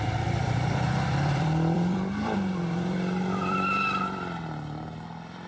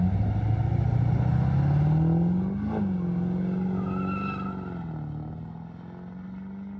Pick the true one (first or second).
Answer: second